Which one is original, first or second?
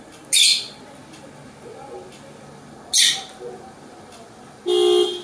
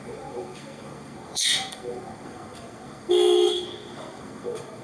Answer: first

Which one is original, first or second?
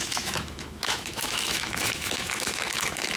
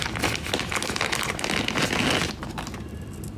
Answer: second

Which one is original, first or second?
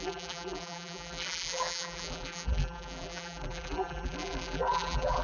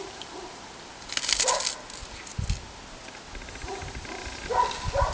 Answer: second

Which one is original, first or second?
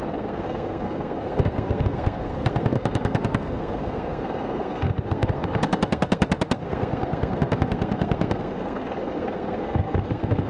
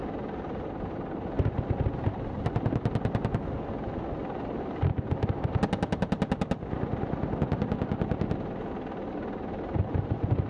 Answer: second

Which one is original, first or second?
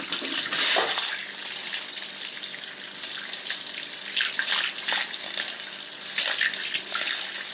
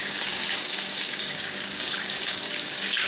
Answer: first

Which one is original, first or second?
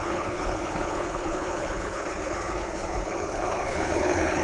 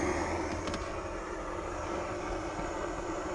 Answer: second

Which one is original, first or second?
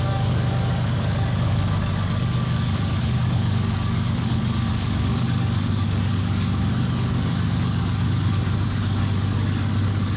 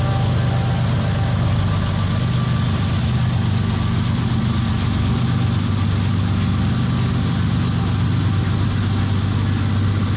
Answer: second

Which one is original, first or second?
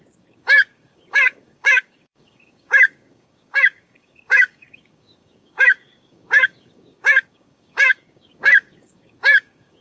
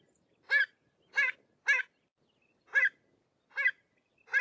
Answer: second